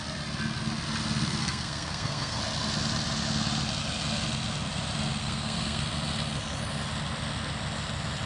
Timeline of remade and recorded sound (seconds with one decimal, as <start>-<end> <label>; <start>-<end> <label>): 0.0-1.4 recorded; 1.4-2.4 remade; 2.4-5.2 recorded; 5.2-5.8 remade; 5.8-8.3 recorded

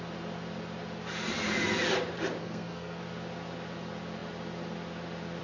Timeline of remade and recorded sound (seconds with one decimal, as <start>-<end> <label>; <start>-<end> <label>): 0.0-2.4 recorded; 2.4-3.0 remade; 3.0-5.4 recorded